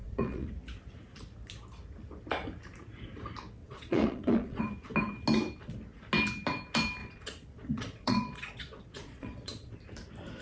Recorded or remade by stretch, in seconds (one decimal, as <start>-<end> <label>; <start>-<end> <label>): 0.0-0.5 remade; 0.5-3.6 recorded; 3.6-4.6 remade; 4.6-7.0 recorded; 7.0-9.7 remade; 9.7-10.4 recorded